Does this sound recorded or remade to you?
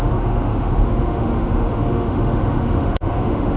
remade